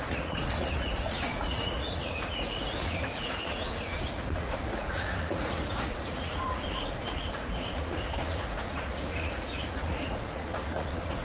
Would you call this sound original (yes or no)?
no